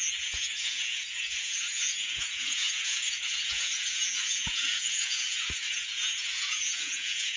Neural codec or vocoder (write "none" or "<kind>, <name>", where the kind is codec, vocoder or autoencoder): vocoder, Vocos